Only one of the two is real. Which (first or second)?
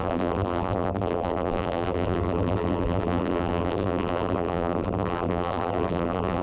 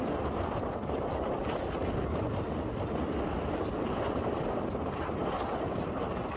second